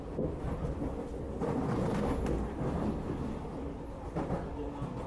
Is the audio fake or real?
real